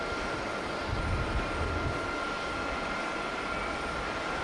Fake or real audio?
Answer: real